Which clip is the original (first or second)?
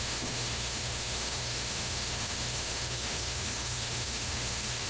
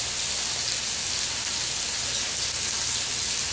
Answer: second